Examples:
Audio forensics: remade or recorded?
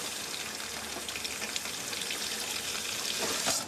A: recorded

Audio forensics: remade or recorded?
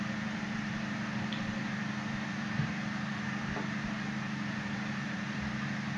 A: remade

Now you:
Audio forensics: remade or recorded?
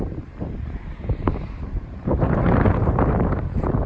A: remade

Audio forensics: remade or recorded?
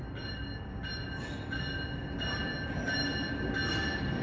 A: recorded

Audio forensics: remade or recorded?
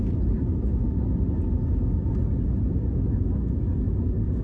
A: recorded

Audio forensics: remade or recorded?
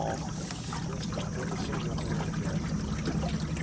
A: recorded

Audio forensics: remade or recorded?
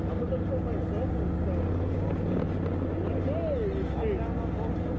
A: recorded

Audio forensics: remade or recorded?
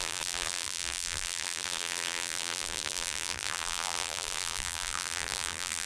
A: remade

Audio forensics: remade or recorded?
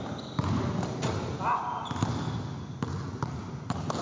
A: recorded